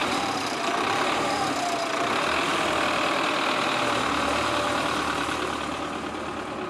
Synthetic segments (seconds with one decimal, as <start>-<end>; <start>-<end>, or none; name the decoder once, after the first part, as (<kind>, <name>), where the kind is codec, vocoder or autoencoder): 0.0-1.4 (vocoder, BigVGAN v2)

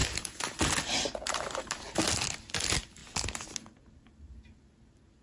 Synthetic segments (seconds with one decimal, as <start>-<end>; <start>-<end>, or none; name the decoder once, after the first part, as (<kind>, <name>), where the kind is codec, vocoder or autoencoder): none

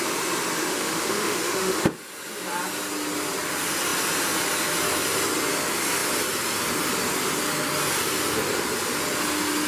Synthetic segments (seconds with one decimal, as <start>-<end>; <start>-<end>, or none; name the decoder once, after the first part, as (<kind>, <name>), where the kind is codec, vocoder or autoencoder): 0.7-1.8 (autoencoder, DAC-VAE)

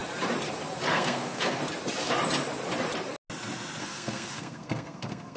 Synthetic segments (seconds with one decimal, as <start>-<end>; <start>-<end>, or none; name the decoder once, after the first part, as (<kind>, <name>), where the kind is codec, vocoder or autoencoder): 0.9-1.6 (codec, SNAC); 3.8-5.4

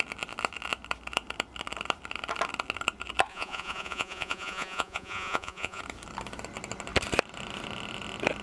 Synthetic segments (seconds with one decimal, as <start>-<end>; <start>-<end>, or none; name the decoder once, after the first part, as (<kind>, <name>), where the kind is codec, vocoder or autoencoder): 3.3-5.8 (vocoder, Vocos)

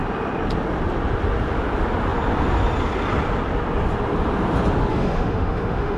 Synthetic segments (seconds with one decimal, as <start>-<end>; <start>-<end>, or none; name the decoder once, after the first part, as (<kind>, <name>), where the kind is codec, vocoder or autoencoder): 4.9-6.0 (autoencoder, DAC-VAE)

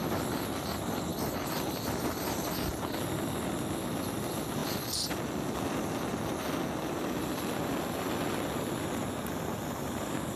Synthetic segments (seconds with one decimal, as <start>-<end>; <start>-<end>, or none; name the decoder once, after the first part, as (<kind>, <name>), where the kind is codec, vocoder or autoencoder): none

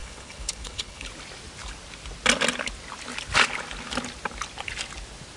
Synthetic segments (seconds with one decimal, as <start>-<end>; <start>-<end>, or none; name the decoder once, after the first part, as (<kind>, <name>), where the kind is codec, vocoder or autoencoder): 0.0-1.1 (codec, HILCodec)